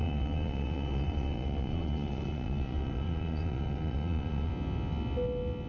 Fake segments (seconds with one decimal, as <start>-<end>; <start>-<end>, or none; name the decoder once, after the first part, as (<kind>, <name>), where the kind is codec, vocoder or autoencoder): 0.0-4.5 (vocoder, Vocos)